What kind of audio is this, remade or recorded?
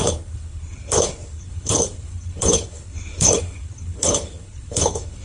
remade